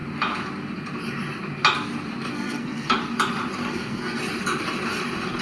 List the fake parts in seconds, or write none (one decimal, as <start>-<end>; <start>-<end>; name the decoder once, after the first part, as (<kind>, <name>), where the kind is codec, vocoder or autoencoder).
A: 2.3-3.0 (codec, SNAC); 3.6-4.2